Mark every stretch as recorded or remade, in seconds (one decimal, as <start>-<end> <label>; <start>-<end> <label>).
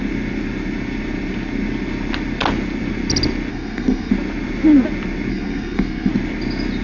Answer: 0.0-3.5 recorded; 3.5-4.1 remade; 4.1-5.3 recorded; 5.3-6.1 remade; 6.1-6.8 recorded